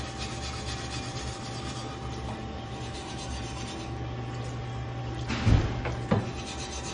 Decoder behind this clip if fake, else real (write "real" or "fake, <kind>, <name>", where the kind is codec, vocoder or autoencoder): real